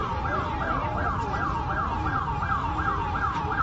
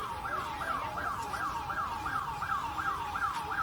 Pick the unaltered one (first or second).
first